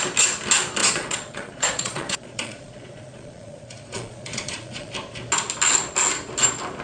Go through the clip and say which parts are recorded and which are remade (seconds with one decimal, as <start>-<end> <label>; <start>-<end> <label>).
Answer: 0.0-0.8 recorded; 0.8-4.9 remade; 4.9-6.8 recorded